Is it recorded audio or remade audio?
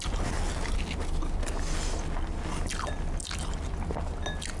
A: recorded